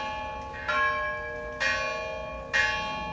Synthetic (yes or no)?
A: no